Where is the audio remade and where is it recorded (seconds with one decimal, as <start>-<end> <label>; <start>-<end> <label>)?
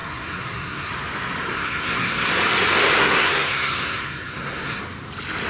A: 0.0-0.9 remade; 0.9-1.5 recorded; 1.5-2.3 remade; 2.3-3.0 recorded; 3.0-4.8 remade; 4.8-5.5 recorded